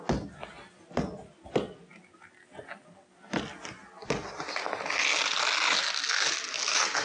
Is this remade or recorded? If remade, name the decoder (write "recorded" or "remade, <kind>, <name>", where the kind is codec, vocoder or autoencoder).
recorded